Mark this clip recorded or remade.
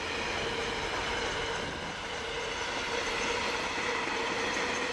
recorded